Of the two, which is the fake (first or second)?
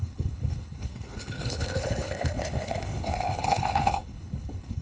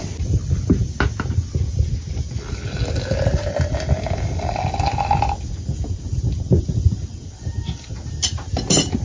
first